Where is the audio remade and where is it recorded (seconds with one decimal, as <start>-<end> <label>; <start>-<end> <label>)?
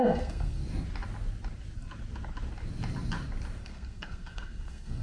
0.0-0.6 remade; 0.6-3.6 recorded; 3.6-5.0 remade